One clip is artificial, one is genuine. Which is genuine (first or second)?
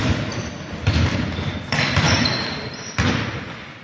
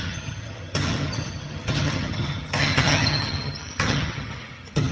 first